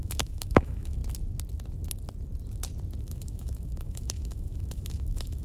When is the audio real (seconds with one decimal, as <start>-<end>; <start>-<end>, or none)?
1.0-3.0